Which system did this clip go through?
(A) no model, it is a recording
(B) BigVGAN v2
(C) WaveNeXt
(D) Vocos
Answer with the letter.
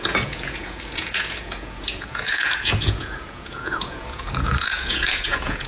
D